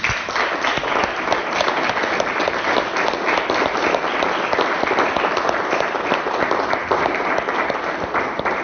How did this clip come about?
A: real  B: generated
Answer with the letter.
A